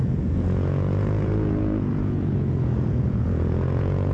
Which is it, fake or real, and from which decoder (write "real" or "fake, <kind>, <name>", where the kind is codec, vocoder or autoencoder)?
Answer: fake, vocoder, Vocos